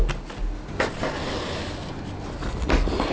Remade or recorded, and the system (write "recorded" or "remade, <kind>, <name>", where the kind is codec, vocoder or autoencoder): recorded